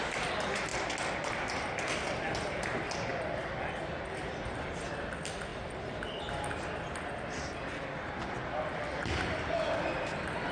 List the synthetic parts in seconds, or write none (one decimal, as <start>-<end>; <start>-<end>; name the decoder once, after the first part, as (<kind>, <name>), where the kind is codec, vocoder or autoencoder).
none